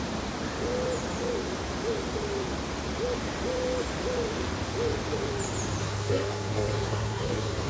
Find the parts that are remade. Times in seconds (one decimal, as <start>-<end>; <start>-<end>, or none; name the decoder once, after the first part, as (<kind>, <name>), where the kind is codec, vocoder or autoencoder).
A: 5.8-7.7 (codec, SNAC)